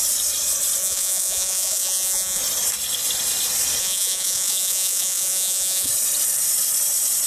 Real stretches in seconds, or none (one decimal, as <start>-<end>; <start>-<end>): 0.0-0.8; 2.4-3.8; 5.9-7.3